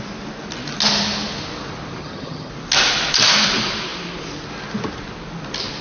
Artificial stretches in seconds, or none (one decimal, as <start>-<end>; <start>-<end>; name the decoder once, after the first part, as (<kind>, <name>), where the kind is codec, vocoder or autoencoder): 2.0-2.5 (vocoder, HiFi-GAN)